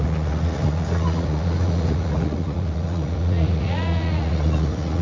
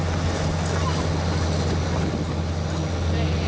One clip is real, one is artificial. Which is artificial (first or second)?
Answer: first